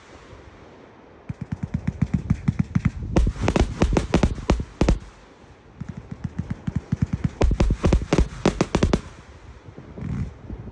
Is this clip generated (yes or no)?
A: no